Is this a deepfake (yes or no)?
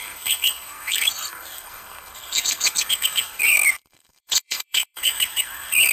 yes